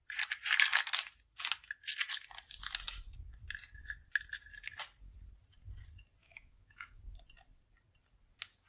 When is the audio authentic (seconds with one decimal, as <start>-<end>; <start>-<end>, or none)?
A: 0.0-6.2; 7.0-8.7